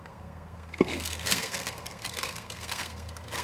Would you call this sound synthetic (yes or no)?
yes